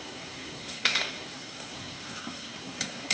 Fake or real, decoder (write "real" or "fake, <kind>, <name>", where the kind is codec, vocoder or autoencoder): fake, codec, SNAC